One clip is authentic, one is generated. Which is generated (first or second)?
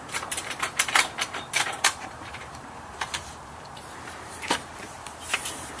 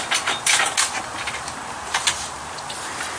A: first